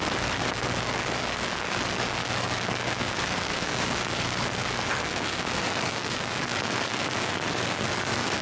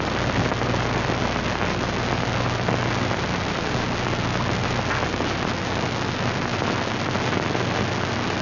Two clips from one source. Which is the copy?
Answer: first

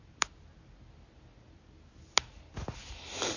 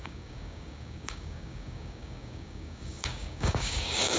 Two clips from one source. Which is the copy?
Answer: second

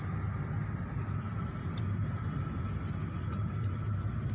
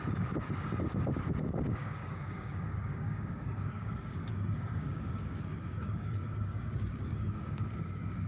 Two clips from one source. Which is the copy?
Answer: second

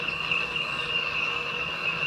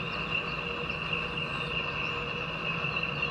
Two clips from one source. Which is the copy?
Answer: first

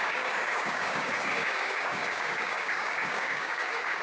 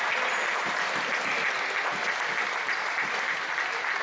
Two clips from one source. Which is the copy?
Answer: first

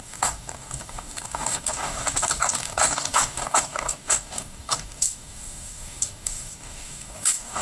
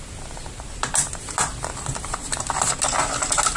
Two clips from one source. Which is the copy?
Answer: first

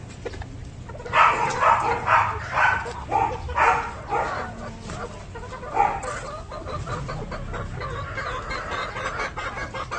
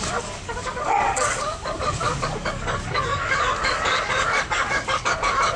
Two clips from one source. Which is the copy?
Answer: second